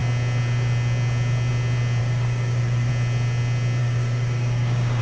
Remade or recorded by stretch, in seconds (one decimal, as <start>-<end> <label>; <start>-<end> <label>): 0.0-2.0 recorded; 2.0-2.9 remade; 2.9-3.8 recorded; 3.8-5.0 remade